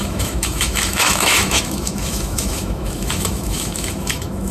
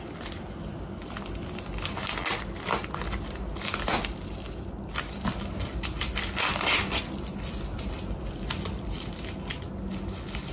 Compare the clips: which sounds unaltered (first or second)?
second